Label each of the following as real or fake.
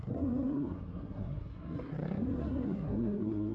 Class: fake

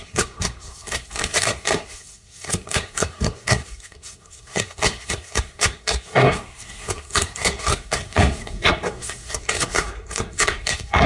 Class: fake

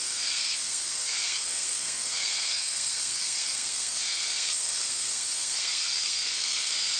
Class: fake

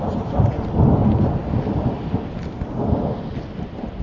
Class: real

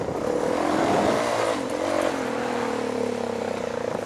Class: real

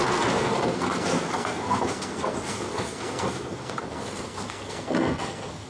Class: fake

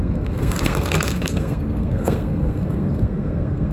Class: fake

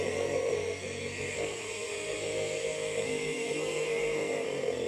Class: fake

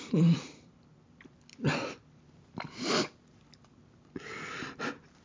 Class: real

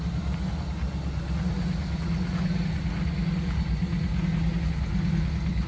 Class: real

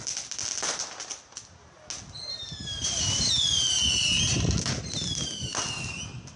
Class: real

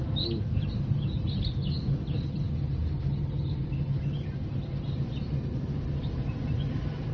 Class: real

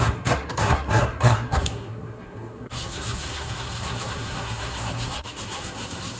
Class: fake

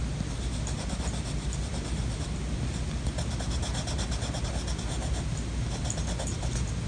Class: real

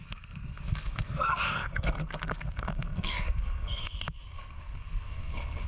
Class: fake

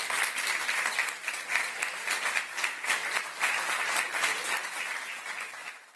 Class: real